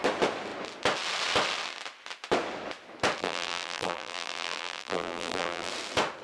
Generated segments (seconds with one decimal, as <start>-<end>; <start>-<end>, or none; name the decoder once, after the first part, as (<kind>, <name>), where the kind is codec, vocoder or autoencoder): 3.2-5.7 (vocoder, BigVGAN v2)